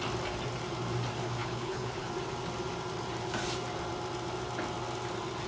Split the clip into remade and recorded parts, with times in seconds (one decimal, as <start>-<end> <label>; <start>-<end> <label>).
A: 0.0-1.4 recorded; 1.4-2.1 remade; 2.1-5.5 recorded